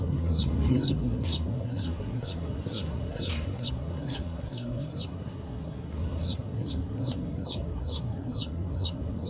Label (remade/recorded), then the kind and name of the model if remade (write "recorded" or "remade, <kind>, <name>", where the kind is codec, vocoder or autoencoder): remade, codec, SNAC